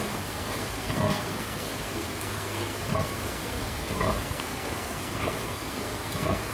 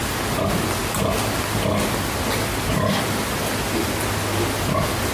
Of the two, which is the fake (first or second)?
first